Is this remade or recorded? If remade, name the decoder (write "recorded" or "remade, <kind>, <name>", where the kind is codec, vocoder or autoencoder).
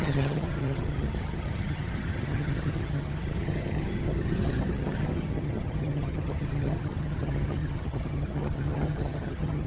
remade, vocoder, HiFi-GAN